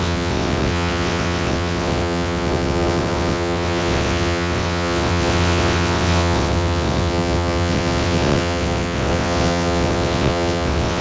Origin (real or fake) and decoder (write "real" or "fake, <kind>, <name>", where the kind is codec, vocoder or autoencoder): fake, vocoder, WaveNeXt